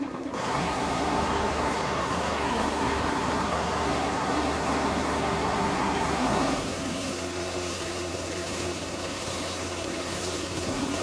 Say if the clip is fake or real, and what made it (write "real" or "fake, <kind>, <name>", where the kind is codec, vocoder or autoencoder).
fake, codec, SNAC